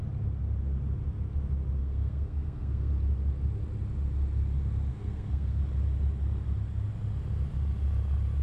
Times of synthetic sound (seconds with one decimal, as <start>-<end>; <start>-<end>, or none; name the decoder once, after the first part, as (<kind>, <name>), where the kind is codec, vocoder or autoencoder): 1.8-2.9 (codec, SNAC); 4.9-5.6